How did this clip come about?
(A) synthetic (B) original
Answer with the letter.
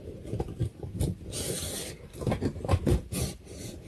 A